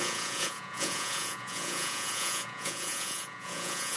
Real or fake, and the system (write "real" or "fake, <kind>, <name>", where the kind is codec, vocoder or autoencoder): fake, vocoder, Vocos